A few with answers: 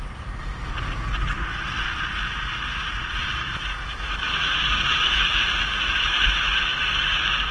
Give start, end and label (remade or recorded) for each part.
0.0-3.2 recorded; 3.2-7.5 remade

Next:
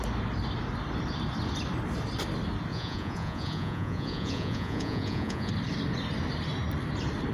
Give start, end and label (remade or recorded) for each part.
0.0-2.7 recorded; 2.7-5.5 remade; 5.5-7.3 recorded